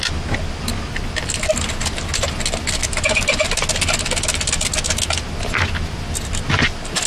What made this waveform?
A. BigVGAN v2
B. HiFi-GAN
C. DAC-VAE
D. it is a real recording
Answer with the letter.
D